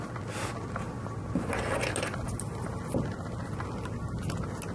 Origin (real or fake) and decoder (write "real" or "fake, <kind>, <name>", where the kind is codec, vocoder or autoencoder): real